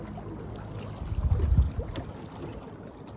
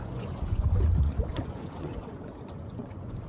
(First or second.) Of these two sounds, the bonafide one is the first